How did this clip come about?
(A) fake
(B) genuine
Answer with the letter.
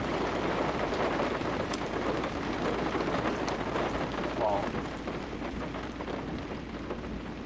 A